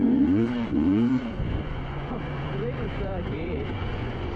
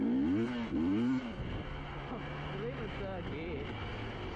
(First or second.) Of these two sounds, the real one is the second